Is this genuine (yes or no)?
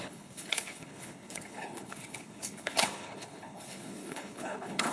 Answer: no